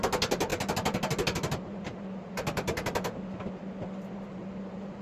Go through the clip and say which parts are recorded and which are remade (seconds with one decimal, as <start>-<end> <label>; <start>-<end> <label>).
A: 0.0-5.0 recorded